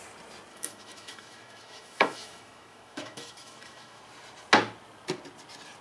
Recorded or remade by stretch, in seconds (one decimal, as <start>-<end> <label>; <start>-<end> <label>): 0.0-0.5 recorded; 0.5-4.0 remade; 4.0-5.8 recorded